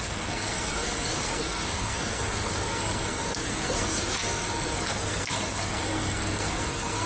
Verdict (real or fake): fake